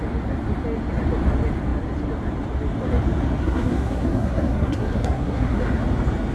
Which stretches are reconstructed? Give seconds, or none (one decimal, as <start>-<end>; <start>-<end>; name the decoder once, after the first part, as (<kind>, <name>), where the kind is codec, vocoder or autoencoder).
3.4-5.6 (codec, SNAC)

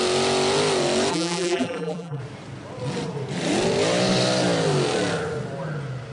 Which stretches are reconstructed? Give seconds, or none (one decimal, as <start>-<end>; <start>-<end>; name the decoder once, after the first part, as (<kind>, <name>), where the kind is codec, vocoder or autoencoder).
1.1-2.2 (vocoder, BigVGAN v2)

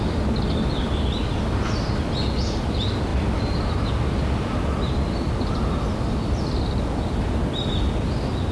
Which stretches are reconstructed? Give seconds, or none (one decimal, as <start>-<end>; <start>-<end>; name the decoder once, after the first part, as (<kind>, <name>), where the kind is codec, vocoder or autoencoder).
none